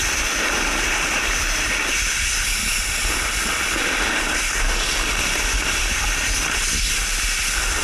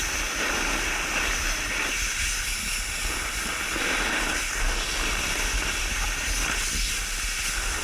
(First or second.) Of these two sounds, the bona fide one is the second